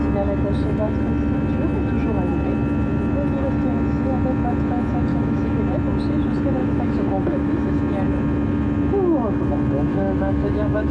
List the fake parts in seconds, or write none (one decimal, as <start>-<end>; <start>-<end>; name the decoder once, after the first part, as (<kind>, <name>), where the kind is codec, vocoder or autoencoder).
5.1-5.6 (autoencoder, DAC-VAE); 6.6-7.8; 9.9-10.9